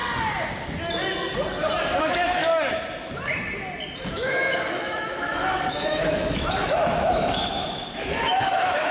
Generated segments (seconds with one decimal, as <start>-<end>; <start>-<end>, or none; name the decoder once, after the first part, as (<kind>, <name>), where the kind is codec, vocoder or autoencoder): 2.0-2.4 (autoencoder, DAC-VAE); 4.1-8.9